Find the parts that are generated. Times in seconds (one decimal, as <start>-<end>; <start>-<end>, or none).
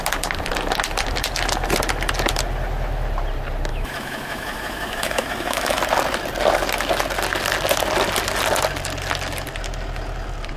3.7-5.8